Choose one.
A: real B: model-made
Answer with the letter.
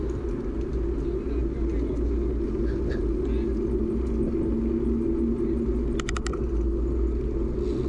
A